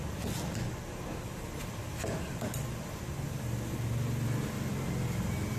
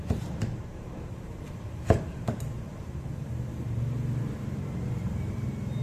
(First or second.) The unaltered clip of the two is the first